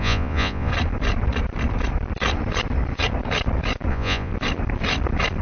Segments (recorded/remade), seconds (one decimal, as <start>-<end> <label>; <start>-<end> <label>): 0.0-0.7 remade; 0.7-3.9 recorded; 3.9-4.3 remade; 4.3-5.4 recorded